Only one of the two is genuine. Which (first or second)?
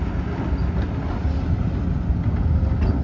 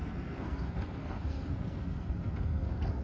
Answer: first